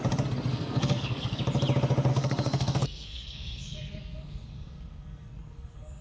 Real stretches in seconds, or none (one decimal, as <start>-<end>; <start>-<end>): 0.0-0.5; 1.4-2.1